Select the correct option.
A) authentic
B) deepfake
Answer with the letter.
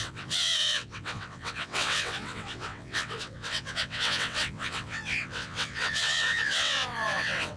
B